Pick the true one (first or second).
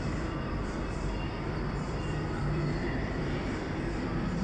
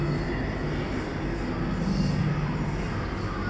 second